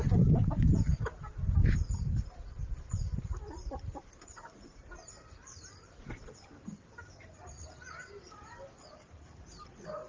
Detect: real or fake fake